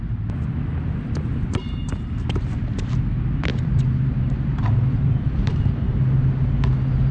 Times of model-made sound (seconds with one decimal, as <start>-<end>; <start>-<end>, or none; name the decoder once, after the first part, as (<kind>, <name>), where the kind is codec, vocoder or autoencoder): 3.5-6.0 (vocoder, BigVGAN v2)